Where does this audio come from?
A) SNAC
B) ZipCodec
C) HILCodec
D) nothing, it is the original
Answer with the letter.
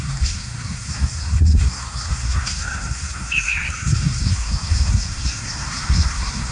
A